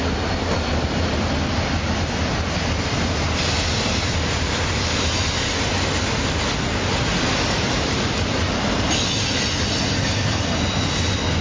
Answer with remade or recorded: recorded